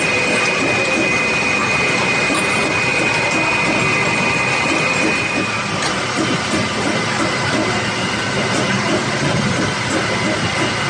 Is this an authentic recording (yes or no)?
yes